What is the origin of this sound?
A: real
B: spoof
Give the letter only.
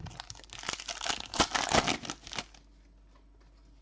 A